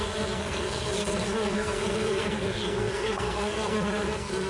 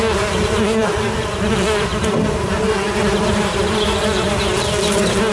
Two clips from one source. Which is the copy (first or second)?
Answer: first